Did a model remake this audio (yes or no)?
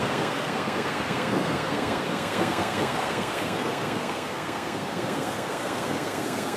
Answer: yes